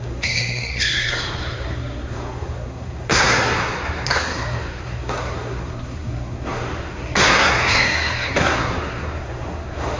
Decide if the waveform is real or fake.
fake